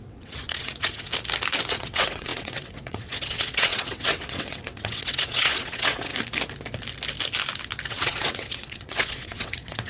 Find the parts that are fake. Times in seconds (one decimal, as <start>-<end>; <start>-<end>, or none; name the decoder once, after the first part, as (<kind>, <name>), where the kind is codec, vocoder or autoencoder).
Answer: 0.0-1.1 (vocoder, WaveNeXt); 1.7-6.1; 7.9-9.9